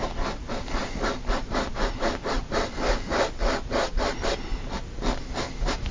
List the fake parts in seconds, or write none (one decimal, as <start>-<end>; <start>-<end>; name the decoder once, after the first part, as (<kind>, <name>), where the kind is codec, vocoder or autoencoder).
none